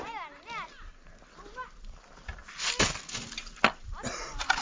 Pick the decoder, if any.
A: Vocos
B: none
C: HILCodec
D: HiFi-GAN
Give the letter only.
B